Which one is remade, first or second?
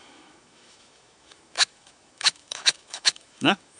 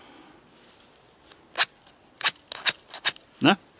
first